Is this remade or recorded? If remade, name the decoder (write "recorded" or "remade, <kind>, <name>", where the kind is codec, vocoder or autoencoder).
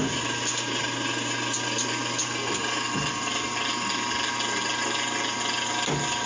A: recorded